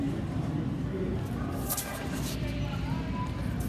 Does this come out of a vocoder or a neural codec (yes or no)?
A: no